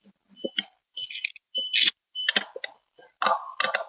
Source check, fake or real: real